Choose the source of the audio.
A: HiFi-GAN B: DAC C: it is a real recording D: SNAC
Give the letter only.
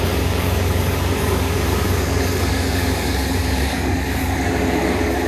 B